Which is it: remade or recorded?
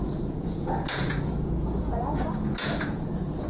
remade